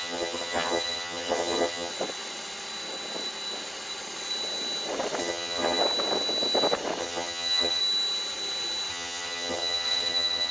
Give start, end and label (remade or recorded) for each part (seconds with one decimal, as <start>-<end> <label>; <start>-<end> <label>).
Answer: 0.0-1.9 remade; 1.9-5.2 recorded; 5.2-5.8 remade; 5.8-7.0 recorded; 7.0-7.8 remade; 7.8-8.9 recorded; 8.9-10.5 remade